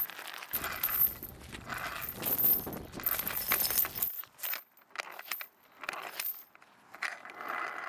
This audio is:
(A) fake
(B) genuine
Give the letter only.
B